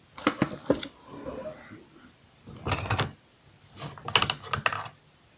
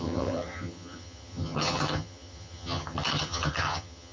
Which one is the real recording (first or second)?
first